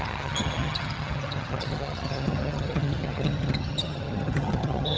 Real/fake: fake